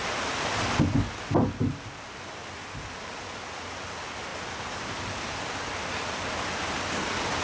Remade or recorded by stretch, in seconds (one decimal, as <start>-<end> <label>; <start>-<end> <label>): 0.0-7.4 recorded

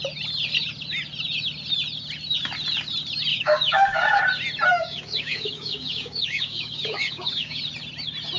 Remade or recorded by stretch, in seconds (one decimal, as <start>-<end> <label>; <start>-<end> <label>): 0.0-3.3 recorded; 3.3-4.2 remade; 4.2-4.7 recorded; 4.7-7.6 remade; 7.6-8.4 recorded

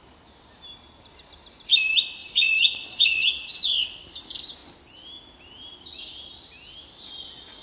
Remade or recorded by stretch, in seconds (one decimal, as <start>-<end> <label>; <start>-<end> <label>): 0.0-2.2 recorded; 2.2-3.6 remade; 3.6-7.6 recorded